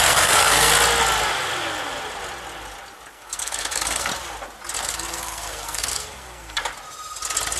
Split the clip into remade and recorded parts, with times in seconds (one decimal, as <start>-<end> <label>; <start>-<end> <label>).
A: 0.0-0.7 remade; 0.7-3.1 recorded; 3.1-4.1 remade; 4.1-4.8 recorded; 4.8-6.6 remade; 6.6-7.6 recorded